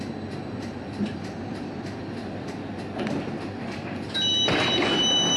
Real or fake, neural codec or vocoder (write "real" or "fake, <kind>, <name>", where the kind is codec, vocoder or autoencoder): fake, vocoder, BigVGAN v2